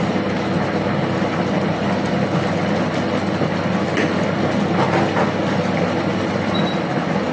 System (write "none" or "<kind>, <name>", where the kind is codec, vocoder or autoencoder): none